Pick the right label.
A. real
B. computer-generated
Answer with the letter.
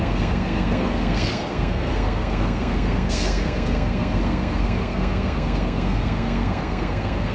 B